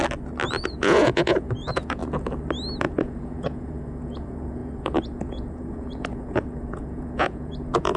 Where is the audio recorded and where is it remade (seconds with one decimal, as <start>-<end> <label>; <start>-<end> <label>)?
0.0-0.6 recorded; 0.6-2.0 remade; 2.0-2.8 recorded; 2.8-8.0 remade